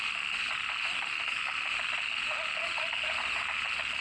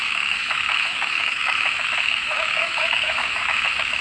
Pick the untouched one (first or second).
first